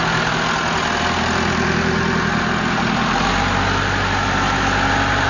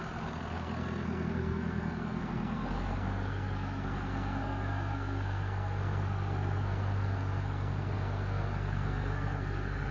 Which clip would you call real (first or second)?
first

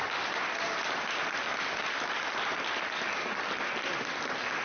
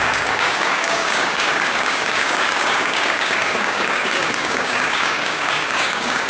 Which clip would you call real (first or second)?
first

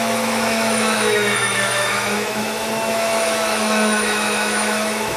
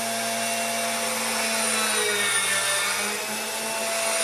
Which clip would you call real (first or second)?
second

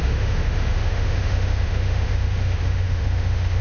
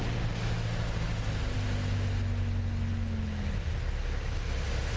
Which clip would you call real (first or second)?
second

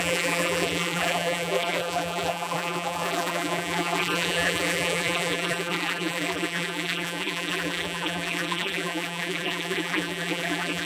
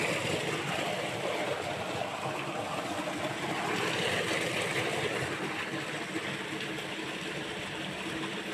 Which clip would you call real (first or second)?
second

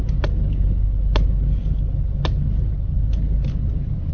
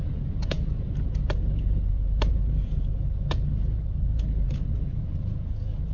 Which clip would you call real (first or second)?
first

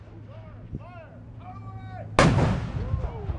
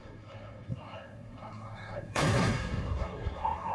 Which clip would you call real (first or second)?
first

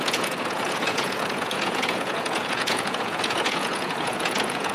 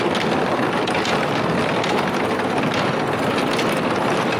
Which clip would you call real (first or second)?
second